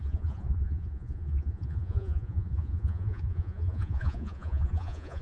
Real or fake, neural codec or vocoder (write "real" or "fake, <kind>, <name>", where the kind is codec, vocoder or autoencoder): fake, vocoder, Vocos